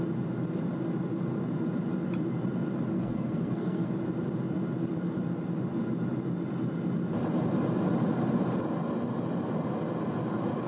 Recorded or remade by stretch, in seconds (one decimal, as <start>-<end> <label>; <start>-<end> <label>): 0.0-2.9 recorded; 2.9-3.9 remade; 3.9-10.7 recorded